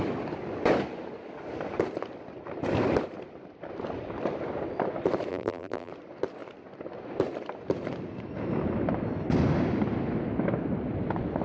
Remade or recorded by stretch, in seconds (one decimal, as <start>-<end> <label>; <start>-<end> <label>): 0.0-5.3 recorded; 5.3-5.9 remade; 5.9-11.4 recorded